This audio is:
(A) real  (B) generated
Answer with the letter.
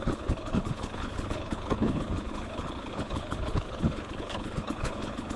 B